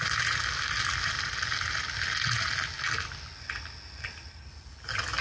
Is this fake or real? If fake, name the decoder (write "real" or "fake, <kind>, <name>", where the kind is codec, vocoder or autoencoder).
real